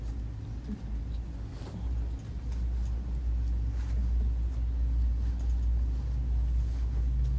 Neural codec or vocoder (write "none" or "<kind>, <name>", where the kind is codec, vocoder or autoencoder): none